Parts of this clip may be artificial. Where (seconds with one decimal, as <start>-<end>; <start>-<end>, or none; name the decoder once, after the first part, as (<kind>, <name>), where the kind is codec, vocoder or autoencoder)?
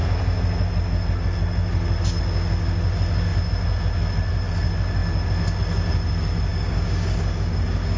6.5-8.0 (codec, DAC)